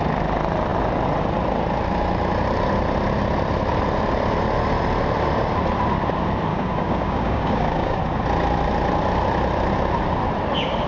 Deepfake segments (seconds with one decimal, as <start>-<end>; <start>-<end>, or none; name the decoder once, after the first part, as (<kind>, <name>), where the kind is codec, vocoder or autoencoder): 6.5-8.0 (codec, DAC)